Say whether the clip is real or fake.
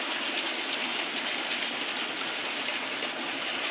real